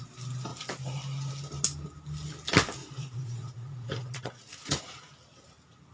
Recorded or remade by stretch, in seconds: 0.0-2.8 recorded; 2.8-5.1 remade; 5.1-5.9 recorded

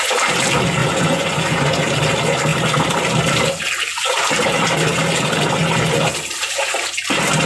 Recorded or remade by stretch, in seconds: 0.0-0.8 recorded; 0.8-1.8 remade; 1.8-7.5 recorded

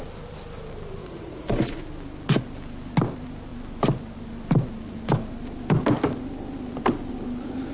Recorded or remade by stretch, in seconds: 0.0-1.0 recorded; 1.0-1.8 remade; 1.8-7.7 recorded